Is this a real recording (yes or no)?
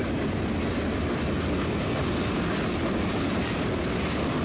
yes